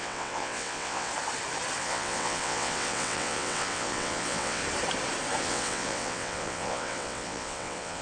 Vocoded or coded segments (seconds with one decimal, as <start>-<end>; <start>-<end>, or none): 0.0-1.1; 1.8-4.6; 5.4-8.0